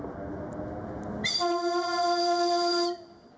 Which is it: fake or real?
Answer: real